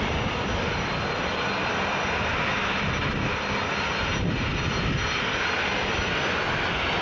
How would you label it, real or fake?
real